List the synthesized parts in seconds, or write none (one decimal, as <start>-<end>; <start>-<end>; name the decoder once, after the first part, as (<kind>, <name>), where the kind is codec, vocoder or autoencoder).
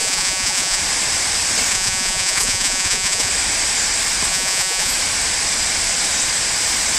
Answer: 0.0-0.8 (vocoder, Vocos); 1.7-3.3; 4.3-4.9